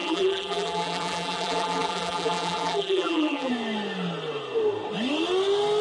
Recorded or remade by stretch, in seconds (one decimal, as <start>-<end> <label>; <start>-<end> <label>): 0.0-3.5 remade; 3.5-5.8 recorded